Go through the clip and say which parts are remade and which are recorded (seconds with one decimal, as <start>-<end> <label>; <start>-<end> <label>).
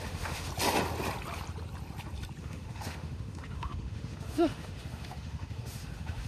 0.0-0.5 remade; 0.5-2.4 recorded; 2.4-6.3 remade